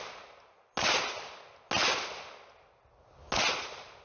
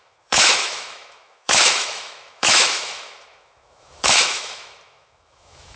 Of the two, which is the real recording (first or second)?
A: first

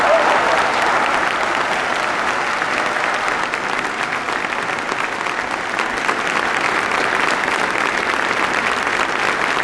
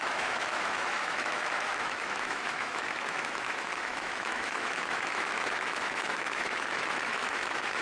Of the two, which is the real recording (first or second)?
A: first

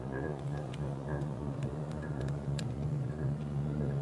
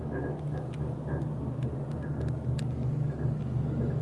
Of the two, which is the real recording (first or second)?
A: second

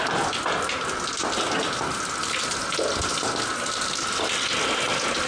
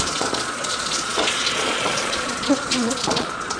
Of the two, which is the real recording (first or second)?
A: first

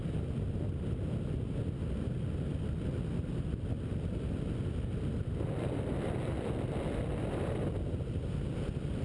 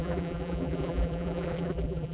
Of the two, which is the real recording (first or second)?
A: first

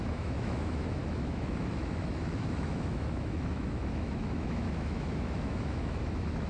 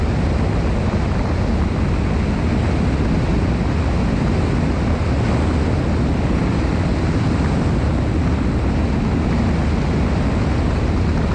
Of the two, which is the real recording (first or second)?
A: second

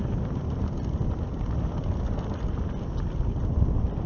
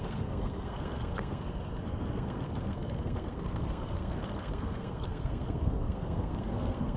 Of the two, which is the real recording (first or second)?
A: first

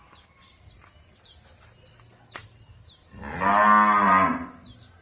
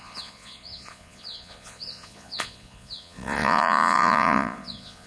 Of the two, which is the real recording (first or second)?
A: first